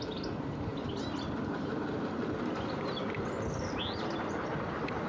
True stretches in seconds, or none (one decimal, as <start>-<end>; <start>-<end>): 0.0-5.1